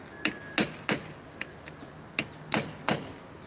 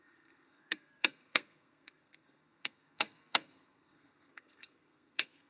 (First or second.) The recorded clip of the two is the first